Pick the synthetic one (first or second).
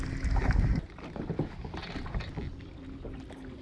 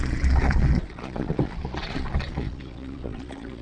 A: second